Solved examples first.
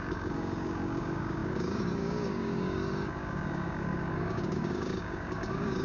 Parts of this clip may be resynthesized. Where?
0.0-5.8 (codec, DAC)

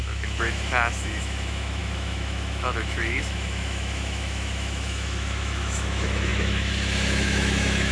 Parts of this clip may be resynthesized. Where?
0.0-7.9 (autoencoder, DAC-VAE)